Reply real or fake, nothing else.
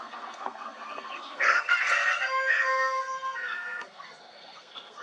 fake